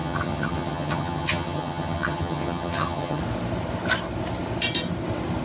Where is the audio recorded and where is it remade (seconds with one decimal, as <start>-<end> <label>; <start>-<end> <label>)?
0.0-3.2 remade; 3.2-5.4 recorded